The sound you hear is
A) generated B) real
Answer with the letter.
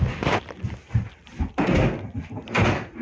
B